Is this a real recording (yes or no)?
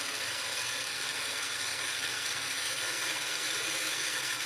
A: no